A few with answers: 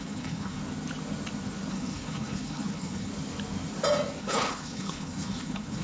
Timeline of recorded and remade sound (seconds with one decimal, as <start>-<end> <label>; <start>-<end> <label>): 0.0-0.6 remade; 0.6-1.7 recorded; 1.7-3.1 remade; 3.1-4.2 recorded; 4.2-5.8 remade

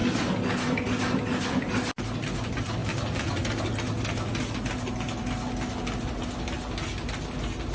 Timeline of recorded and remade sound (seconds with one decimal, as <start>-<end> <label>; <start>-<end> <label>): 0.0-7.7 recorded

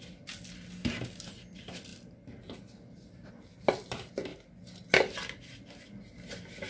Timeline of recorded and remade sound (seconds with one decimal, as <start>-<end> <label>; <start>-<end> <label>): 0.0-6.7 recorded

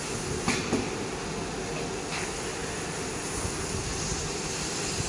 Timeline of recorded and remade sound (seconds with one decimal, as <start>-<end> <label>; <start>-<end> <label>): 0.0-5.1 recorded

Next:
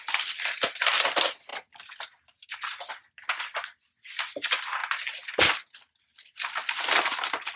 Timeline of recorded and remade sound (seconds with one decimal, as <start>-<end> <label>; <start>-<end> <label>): 0.0-7.6 recorded

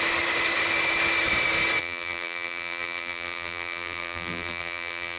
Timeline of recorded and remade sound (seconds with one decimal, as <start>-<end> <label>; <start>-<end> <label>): 0.0-1.8 recorded; 1.8-5.2 remade